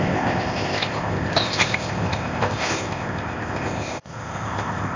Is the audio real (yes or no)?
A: no